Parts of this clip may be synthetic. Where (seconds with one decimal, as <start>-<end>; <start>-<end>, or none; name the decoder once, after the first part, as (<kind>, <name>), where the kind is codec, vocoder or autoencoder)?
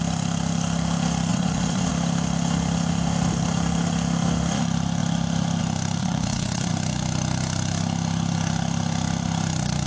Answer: 1.3-1.9 (vocoder, Vocos); 6.0-6.7